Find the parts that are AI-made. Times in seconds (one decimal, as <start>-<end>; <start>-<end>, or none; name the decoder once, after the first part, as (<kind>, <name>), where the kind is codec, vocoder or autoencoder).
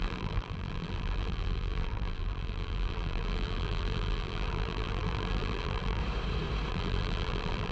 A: 0.0-6.0 (vocoder, BigVGAN v2); 6.7-7.7